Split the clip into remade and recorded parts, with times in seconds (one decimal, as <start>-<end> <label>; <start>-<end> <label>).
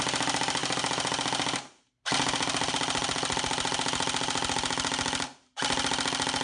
0.0-6.4 recorded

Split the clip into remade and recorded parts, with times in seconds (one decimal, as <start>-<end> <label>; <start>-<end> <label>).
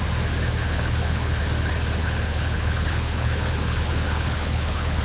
0.0-0.6 recorded; 0.6-1.4 remade; 1.4-2.0 recorded; 2.0-5.0 remade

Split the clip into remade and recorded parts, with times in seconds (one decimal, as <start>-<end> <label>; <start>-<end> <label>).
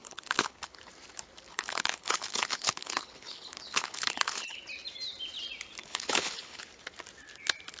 0.0-0.8 remade; 0.8-1.5 recorded; 1.5-4.6 remade; 4.6-5.8 recorded; 5.8-6.6 remade; 6.6-7.8 recorded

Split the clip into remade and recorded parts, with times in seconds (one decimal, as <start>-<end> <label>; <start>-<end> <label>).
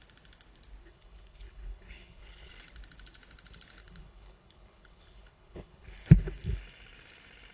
0.0-0.8 recorded; 0.8-2.5 remade; 2.5-3.8 recorded; 3.8-6.6 remade; 6.6-7.5 recorded